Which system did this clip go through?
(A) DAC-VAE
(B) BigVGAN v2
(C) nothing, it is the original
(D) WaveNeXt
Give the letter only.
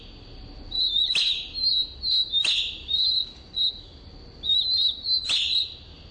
C